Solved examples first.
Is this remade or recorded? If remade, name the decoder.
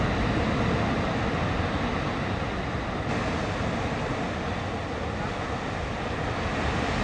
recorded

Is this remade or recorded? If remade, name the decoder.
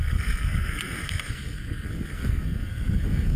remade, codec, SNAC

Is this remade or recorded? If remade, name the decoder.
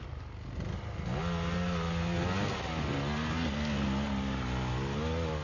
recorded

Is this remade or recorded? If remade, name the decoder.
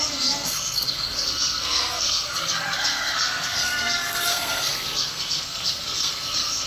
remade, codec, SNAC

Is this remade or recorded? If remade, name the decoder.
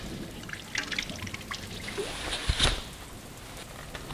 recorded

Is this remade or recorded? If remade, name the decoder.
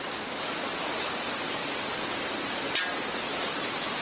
recorded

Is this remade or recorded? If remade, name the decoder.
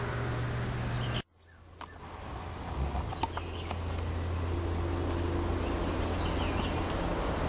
recorded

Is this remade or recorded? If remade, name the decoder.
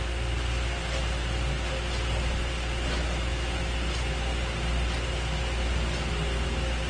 recorded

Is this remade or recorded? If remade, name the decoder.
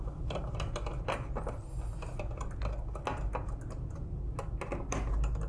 recorded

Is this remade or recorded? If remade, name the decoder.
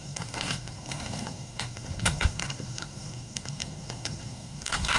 remade, codec, SNAC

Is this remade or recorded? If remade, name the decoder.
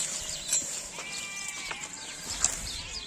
recorded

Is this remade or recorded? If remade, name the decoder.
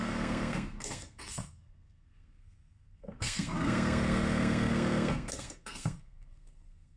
remade, codec, SNAC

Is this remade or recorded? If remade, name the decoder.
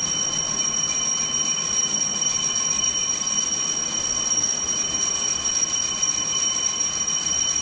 recorded